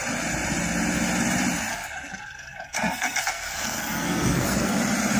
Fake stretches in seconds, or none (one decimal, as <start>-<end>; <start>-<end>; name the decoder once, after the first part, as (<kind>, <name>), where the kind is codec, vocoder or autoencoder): 1.7-4.8 (codec, SNAC)